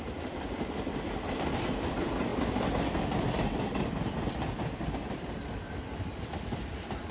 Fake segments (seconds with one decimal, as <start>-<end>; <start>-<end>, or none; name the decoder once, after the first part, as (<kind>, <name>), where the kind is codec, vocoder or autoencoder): 0.0-2.3 (vocoder, BigVGAN v2); 5.1-7.1